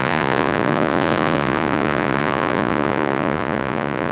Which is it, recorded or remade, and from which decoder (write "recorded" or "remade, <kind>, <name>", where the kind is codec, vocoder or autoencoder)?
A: remade, vocoder, Vocos